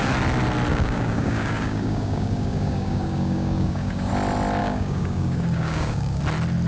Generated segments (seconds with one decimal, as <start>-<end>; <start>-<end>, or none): 0.7-4.1; 4.6-6.2